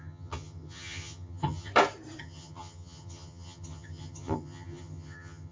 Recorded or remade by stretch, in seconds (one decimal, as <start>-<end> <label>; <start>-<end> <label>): 0.0-1.7 remade; 1.7-2.2 recorded; 2.2-5.5 remade